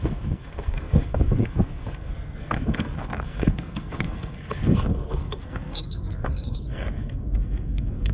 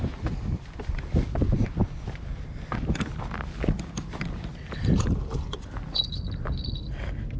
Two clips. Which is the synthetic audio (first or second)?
first